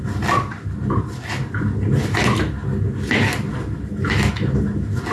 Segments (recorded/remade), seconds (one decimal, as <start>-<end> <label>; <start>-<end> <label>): 0.0-5.1 recorded